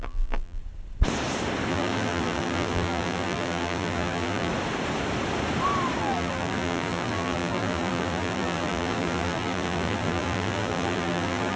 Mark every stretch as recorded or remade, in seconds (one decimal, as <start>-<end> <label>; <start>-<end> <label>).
0.0-0.6 remade; 0.6-1.7 recorded; 1.7-4.5 remade; 4.5-6.0 recorded; 6.0-11.6 remade